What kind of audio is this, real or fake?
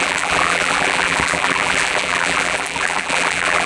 fake